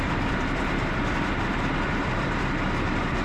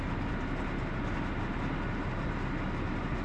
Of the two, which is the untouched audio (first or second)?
second